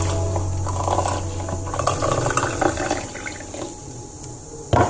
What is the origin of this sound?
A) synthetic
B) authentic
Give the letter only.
B